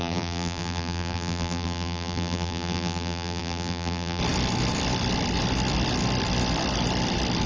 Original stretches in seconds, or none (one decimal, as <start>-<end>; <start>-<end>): 4.2-7.5